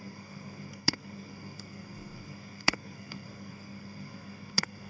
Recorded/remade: remade